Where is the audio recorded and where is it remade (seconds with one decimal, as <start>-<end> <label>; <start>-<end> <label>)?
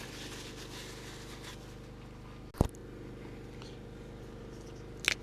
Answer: 0.0-5.2 recorded